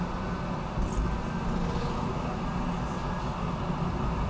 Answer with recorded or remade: recorded